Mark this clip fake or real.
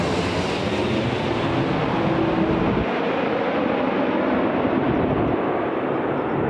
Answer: real